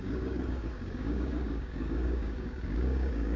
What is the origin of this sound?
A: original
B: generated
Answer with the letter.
B